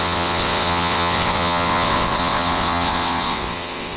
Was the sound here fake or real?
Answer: fake